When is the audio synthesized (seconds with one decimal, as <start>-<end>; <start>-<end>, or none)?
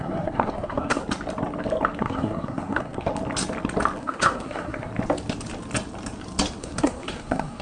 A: 0.0-1.0; 2.0-3.1; 4.0-4.9; 6.6-7.6